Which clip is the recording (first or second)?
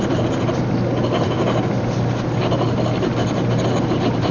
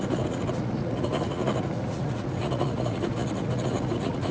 first